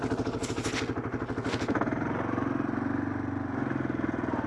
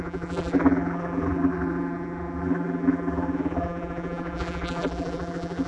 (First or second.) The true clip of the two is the first